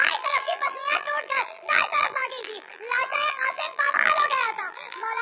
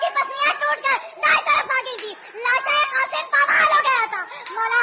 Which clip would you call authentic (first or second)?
second